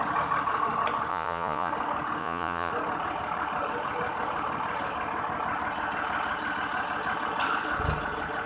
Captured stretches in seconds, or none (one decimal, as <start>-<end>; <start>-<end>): 0.0-1.1; 1.7-2.2; 2.7-8.5